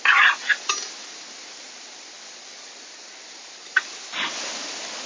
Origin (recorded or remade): recorded